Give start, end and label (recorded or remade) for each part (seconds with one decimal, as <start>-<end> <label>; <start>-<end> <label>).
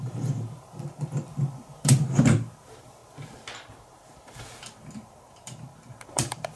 0.0-3.0 remade; 3.0-4.2 recorded; 4.2-6.6 remade